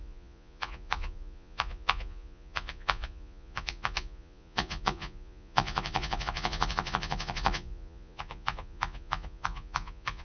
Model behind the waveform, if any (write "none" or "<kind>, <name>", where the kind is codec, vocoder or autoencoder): vocoder, Vocos